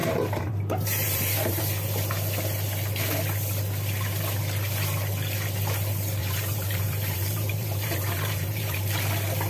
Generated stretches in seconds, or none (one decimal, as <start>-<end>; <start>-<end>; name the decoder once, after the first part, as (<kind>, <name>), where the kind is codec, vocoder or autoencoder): 0.0-1.6 (vocoder, BigVGAN v2); 6.2-8.8

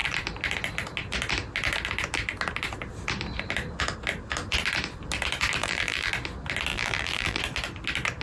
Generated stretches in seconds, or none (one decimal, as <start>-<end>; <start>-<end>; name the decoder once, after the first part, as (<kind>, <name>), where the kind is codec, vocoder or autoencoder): 5.6-6.1 (vocoder, BigVGAN v2); 6.7-7.4

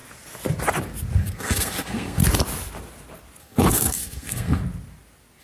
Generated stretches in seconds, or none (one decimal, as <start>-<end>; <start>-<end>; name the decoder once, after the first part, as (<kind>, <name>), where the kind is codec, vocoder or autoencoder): 1.2-2.2 (codec, SNAC); 3.4-4.6

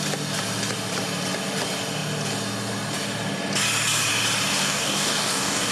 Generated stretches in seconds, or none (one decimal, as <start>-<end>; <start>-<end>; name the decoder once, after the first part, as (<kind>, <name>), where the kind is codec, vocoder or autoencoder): 4.6-5.7 (codec, DAC)

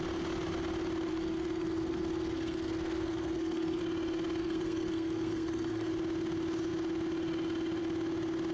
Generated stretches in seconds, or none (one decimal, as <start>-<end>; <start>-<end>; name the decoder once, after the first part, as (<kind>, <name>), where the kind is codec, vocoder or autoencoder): 1.1-3.8 (codec, SNAC); 4.4-5.9

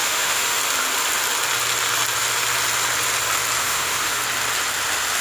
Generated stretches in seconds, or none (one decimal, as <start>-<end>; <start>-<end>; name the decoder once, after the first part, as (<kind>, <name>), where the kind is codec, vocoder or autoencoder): 0.0-0.6 (autoencoder, DAC-VAE); 3.6-4.2

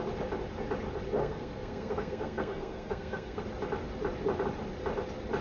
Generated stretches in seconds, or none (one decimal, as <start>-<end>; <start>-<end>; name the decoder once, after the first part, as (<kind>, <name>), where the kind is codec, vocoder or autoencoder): 1.2-3.4 (codec, SNAC)

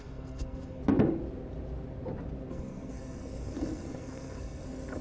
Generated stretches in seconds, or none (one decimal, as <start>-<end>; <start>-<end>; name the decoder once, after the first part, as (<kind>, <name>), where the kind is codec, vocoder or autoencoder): 0.0-0.8 (codec, SNAC); 2.5-5.0